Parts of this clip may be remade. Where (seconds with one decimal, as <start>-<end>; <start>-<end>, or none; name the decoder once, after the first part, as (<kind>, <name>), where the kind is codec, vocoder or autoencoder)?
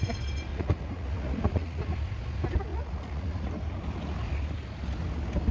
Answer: 0.5-1.8 (vocoder, Vocos); 2.7-3.5